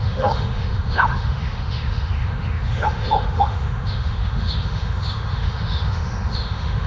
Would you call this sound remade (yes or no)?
yes